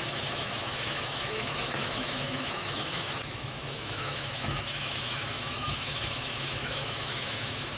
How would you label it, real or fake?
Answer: fake